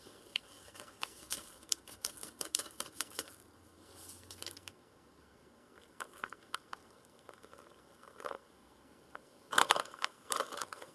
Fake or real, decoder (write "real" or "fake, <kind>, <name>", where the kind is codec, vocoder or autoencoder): fake, codec, SNAC